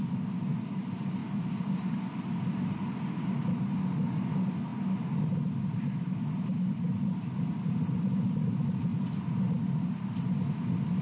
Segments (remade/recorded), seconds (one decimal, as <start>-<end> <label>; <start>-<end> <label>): 0.0-11.0 recorded